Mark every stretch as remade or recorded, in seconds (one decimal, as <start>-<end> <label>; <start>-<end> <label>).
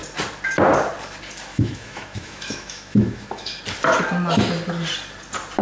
0.0-1.5 recorded; 1.5-3.6 remade; 3.6-5.6 recorded